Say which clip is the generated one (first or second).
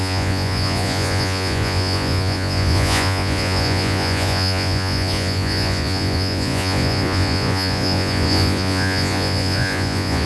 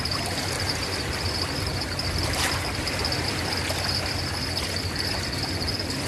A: first